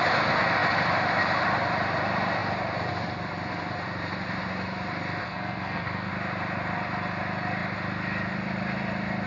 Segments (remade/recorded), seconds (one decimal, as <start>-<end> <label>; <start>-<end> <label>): 0.0-5.2 recorded; 5.2-6.1 remade; 6.1-9.3 recorded